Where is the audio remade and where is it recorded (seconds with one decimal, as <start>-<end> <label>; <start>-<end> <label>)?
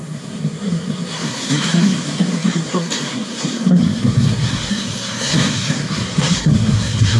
0.0-7.2 remade